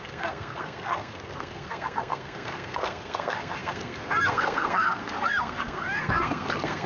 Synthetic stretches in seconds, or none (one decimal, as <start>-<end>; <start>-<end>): 0.0-6.9